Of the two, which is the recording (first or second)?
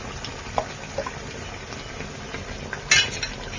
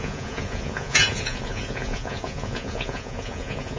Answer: first